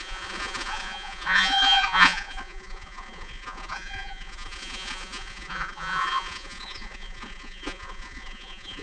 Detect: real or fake fake